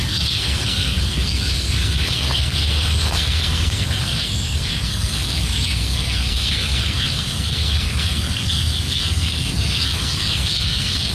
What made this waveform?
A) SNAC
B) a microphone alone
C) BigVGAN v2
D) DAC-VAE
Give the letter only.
A